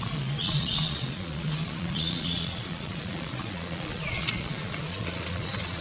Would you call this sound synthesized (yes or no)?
yes